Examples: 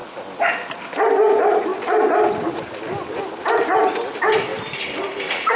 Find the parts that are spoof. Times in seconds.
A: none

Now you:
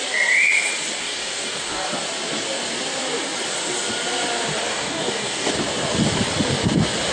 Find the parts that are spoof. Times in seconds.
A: 1.0-1.9 (codec, DAC); 4.7-5.5

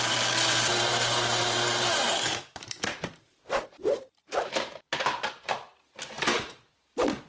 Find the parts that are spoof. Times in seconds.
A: 0.7-4.4 (vocoder, BigVGAN v2); 6.3-7.3

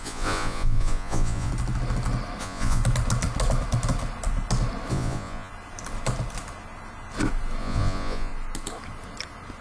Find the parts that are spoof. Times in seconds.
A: 0.0-1.5 (vocoder, Vocos); 2.4-2.8; 4.9-5.5; 7.6-8.3